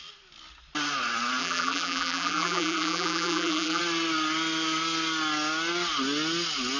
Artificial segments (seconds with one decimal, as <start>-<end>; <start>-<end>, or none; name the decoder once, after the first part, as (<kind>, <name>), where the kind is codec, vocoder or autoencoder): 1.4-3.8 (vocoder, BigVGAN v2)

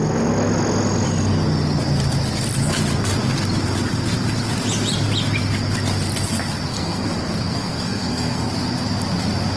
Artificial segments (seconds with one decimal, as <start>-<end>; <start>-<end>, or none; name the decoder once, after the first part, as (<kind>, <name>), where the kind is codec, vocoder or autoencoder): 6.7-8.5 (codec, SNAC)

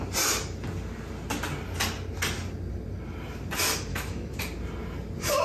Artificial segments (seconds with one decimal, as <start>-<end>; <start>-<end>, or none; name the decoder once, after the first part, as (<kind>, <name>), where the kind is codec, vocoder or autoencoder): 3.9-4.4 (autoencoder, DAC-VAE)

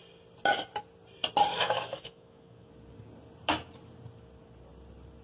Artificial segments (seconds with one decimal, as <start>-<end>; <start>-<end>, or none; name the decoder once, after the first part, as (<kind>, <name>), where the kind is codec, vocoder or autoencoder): 1.5-2.7 (autoencoder, DAC-VAE)

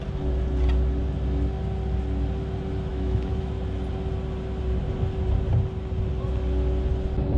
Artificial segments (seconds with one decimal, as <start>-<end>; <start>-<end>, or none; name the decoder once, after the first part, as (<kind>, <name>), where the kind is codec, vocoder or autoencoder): 2.9-3.5 (autoencoder, DAC-VAE)

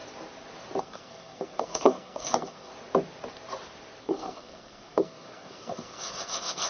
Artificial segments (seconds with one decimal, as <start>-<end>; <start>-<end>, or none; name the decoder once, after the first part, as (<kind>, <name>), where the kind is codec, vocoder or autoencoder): 0.8-2.7 (codec, SNAC); 4.0-6.7